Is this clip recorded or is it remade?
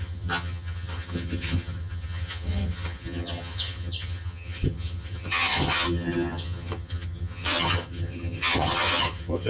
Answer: remade